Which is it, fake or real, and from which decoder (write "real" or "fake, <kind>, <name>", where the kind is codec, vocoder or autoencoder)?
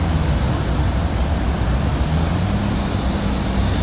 real